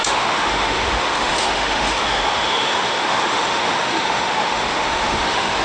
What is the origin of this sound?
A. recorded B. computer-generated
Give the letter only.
B